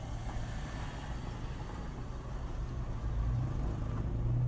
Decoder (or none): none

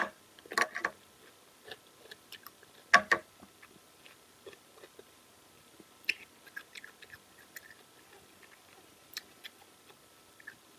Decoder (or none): none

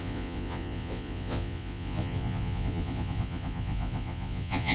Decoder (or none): vocoder, Vocos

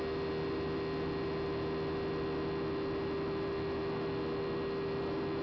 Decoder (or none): none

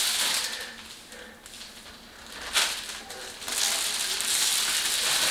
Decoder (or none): none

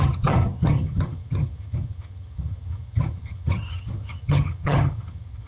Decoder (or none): vocoder, HiFi-GAN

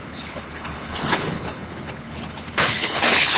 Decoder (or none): codec, HILCodec